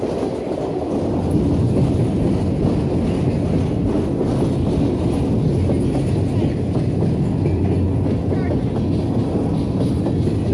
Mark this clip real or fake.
real